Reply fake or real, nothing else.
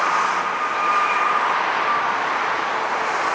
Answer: real